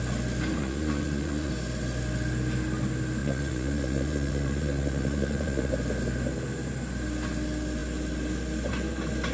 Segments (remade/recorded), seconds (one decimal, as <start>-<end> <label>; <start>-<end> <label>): 0.0-0.6 recorded; 0.6-1.5 remade; 1.5-3.2 recorded; 3.2-5.7 remade; 5.7-9.3 recorded